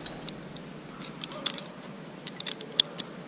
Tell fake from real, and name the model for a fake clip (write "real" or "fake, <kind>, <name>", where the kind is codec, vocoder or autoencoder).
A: real